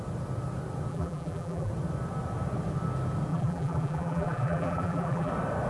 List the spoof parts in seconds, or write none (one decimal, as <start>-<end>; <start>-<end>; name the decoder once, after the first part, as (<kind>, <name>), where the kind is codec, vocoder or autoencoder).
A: 0.9-1.7 (vocoder, BigVGAN v2); 3.3-5.3